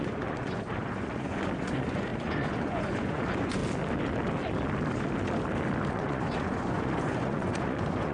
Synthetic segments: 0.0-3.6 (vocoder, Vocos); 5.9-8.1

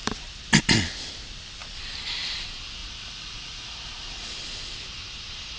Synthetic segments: 2.8-4.3 (vocoder, Vocos)

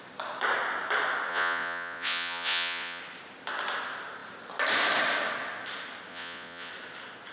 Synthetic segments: 1.3-3.0 (vocoder, Vocos); 6.1-6.7

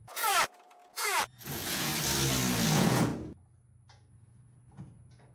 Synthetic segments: 0.0-1.9 (vocoder, Vocos); 2.7-3.1; 4.1-5.3

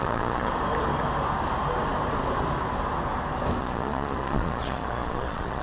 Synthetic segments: 0.0-0.5 (vocoder, Vocos); 3.6-5.6

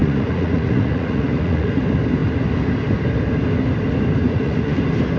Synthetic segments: 0.0-1.8 (vocoder, Vocos); 4.3-4.8

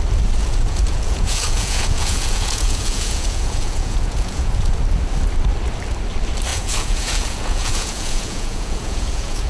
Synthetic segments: 0.4-4.8 (vocoder, Vocos); 6.5-9.5

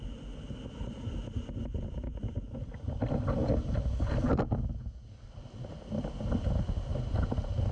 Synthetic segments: none